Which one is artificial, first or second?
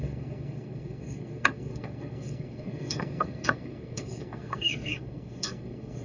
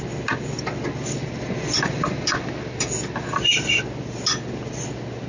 first